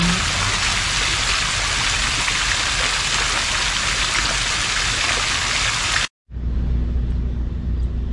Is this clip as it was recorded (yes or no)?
yes